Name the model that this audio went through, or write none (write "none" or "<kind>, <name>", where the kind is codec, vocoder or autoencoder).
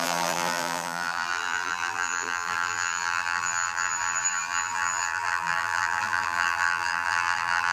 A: vocoder, BigVGAN v2